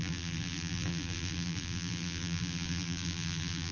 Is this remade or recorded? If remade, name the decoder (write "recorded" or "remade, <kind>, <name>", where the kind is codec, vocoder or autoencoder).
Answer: remade, vocoder, BigVGAN v2